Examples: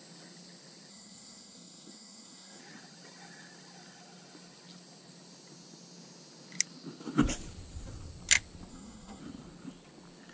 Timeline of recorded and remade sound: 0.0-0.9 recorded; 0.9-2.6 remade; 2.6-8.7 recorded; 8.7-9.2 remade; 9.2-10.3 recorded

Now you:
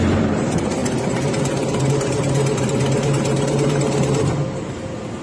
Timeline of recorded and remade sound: 0.0-5.2 remade

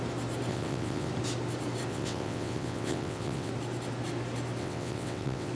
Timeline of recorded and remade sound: 0.0-0.5 recorded; 0.5-1.1 remade; 1.1-1.9 recorded; 1.9-3.5 remade; 3.5-4.6 recorded; 4.6-5.5 remade

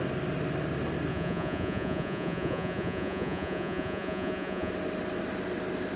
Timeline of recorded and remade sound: 0.0-1.1 recorded; 1.1-4.7 remade; 4.7-6.0 recorded

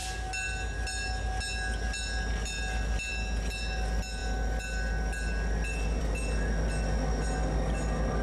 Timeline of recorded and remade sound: 0.0-8.2 recorded